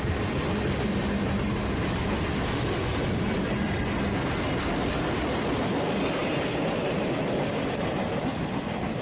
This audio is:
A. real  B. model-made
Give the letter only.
A